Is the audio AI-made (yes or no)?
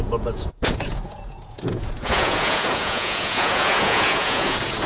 yes